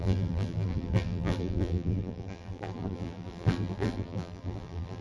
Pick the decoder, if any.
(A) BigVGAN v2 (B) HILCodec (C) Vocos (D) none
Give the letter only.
A